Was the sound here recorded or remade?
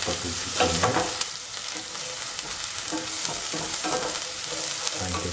recorded